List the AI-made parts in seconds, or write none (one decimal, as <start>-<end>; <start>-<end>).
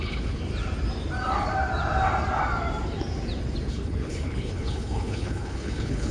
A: 0.0-0.4; 3.7-6.1